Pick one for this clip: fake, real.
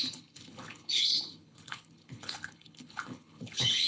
fake